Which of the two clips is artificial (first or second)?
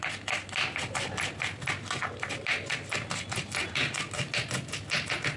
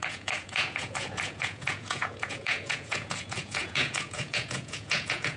second